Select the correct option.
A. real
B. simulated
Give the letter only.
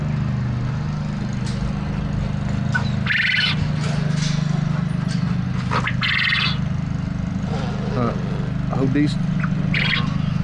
A